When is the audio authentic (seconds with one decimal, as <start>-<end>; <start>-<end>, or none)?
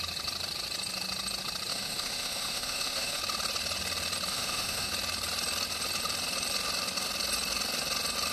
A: 0.0-1.7; 3.2-4.3; 4.9-8.3